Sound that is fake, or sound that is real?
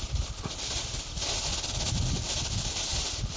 real